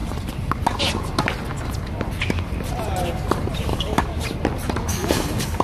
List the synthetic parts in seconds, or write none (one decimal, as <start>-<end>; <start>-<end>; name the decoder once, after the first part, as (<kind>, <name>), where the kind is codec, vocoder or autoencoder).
3.7-4.2 (codec, DAC); 4.9-5.6